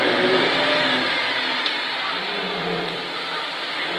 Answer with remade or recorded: recorded